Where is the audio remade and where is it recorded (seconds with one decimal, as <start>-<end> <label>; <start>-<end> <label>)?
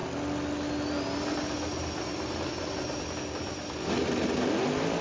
0.0-5.0 recorded